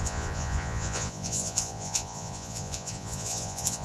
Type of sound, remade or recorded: remade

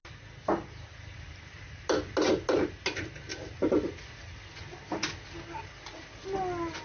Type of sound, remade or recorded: recorded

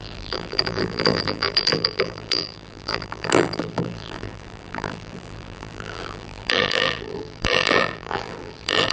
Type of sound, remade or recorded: remade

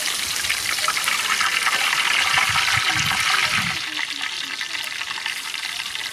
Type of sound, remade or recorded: recorded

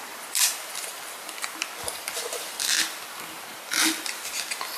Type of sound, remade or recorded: recorded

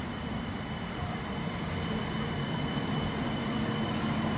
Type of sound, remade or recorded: remade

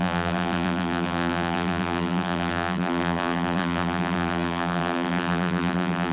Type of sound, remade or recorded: remade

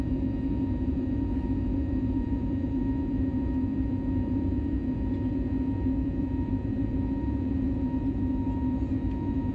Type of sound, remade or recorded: remade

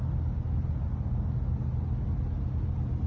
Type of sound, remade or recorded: recorded